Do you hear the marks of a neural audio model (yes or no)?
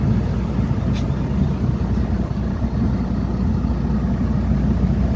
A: no